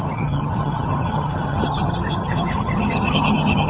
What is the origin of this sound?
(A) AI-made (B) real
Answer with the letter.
A